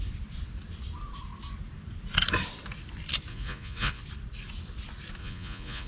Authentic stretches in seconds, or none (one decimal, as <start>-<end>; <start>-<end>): 0.0-3.3; 4.0-5.2